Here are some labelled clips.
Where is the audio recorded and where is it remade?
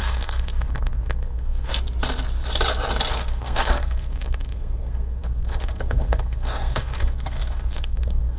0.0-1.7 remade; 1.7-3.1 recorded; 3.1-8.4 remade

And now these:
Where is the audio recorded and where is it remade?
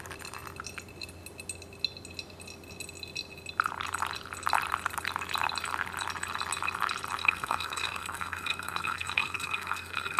0.0-7.2 recorded; 7.2-10.2 remade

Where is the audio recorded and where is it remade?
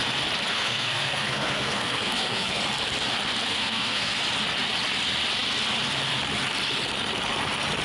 0.0-0.5 recorded; 0.5-2.6 remade; 2.6-3.5 recorded; 3.5-4.2 remade; 4.2-7.8 recorded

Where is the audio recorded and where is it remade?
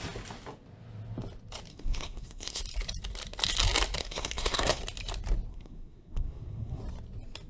0.0-1.7 recorded; 1.7-2.6 remade; 2.6-4.0 recorded; 4.0-4.8 remade; 4.8-5.5 recorded; 5.5-6.8 remade; 6.8-7.5 recorded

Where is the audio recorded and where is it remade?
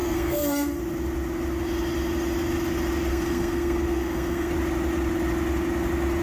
0.0-0.8 remade; 0.8-3.1 recorded; 3.1-4.5 remade; 4.5-6.2 recorded